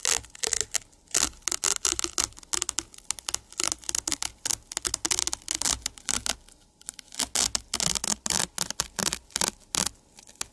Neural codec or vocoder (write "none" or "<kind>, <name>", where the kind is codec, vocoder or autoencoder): none